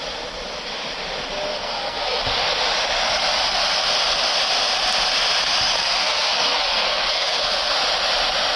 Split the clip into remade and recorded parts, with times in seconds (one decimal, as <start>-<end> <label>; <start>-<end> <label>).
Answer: 0.0-1.5 recorded; 1.5-2.2 remade; 2.2-5.8 recorded; 5.8-7.7 remade; 7.7-8.6 recorded